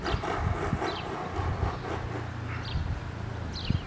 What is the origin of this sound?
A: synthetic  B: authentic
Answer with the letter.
B